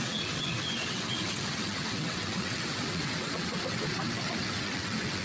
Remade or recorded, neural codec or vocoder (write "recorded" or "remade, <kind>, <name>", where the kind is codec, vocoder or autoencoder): remade, vocoder, WaveNeXt